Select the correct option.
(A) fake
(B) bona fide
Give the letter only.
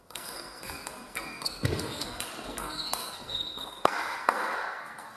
A